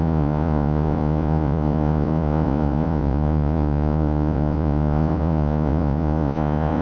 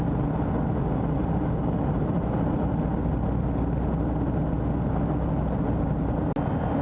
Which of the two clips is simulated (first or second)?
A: first